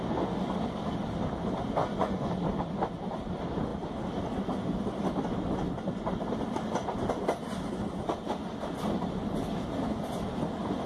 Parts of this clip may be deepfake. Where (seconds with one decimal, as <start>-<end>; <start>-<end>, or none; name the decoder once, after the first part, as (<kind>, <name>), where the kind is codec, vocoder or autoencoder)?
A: 1.8-2.3 (vocoder, Vocos)

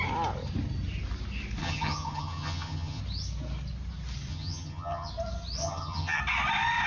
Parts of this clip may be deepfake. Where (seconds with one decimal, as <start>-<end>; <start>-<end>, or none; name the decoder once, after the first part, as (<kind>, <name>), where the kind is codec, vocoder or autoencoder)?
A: 1.6-3.0 (vocoder, HiFi-GAN); 4.3-5.1; 5.6-6.2

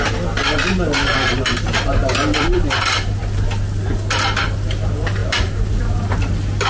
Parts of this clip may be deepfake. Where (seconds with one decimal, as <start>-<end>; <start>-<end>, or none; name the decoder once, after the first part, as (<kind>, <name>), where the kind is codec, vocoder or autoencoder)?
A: 2.0-3.2 (vocoder, BigVGAN v2); 5.2-5.8

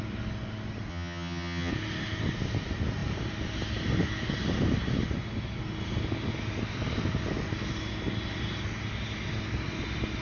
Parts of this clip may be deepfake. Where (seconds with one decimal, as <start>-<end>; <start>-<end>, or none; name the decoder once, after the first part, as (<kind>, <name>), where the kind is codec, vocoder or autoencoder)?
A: 0.9-1.7 (vocoder, HiFi-GAN)

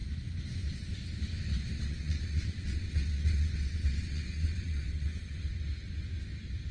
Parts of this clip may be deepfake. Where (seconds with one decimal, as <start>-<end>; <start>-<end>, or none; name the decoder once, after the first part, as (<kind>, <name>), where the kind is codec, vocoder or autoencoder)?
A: 1.5-5.5 (vocoder, WaveNeXt)

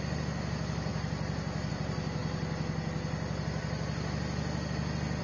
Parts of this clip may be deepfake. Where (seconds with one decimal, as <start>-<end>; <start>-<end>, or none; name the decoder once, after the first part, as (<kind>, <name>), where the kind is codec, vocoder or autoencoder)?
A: none

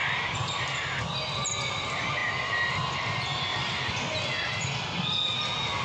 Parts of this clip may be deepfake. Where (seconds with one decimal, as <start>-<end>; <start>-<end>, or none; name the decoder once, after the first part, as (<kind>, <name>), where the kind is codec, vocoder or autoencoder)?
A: 2.2-2.9 (vocoder, BigVGAN v2)